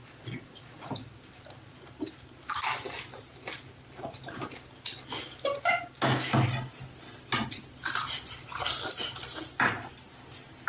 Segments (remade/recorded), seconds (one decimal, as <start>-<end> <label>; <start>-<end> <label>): 0.0-0.9 remade; 0.9-10.7 recorded